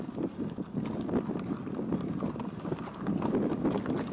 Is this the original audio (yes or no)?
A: yes